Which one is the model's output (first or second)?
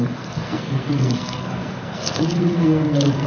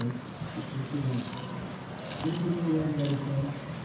first